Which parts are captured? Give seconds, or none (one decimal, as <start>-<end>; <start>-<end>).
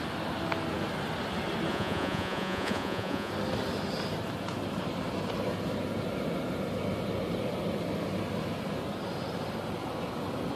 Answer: 0.0-1.7; 3.3-10.6